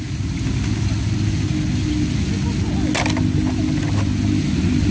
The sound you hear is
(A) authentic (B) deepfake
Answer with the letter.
A